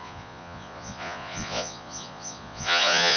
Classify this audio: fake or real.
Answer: fake